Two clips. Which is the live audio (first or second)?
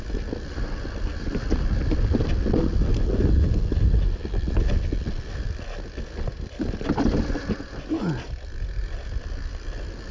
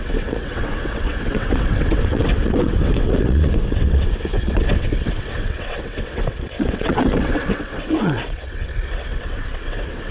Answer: first